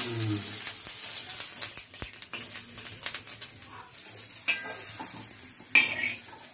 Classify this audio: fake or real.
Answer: real